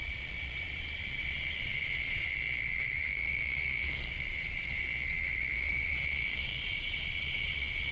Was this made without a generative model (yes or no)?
no